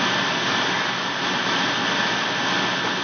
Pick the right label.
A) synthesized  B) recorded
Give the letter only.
B